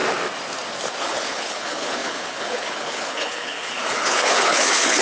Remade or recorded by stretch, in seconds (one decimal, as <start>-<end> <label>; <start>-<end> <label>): 0.0-1.0 recorded; 1.0-5.0 remade